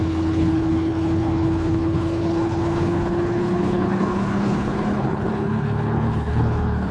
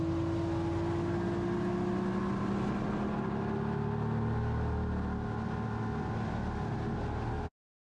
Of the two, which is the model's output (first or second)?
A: first